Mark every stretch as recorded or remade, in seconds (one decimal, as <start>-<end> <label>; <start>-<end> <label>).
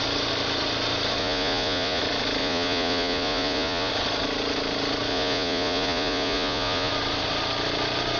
0.0-1.2 recorded; 1.2-2.0 remade; 2.0-2.4 recorded; 2.4-3.9 remade; 3.9-5.1 recorded; 5.1-6.9 remade; 6.9-8.2 recorded